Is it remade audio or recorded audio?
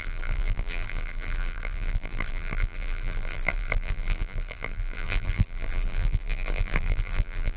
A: remade